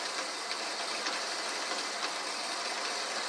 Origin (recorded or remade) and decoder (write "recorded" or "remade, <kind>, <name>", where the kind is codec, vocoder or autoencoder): recorded